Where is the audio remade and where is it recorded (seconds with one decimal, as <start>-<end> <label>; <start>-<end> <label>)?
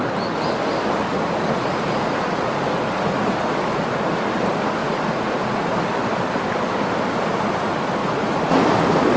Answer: 0.0-1.1 recorded; 1.1-3.8 remade; 3.8-4.8 recorded; 4.8-5.7 remade; 5.7-8.0 recorded; 8.0-8.6 remade; 8.6-9.2 recorded